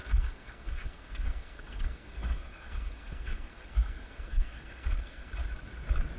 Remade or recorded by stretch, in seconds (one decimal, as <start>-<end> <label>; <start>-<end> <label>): 0.0-5.3 remade; 5.3-6.2 recorded